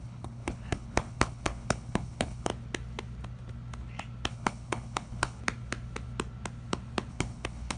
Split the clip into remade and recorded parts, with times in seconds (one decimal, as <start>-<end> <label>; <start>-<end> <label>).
0.0-2.5 remade; 2.5-4.3 recorded; 4.3-5.4 remade; 5.4-7.1 recorded; 7.1-7.8 remade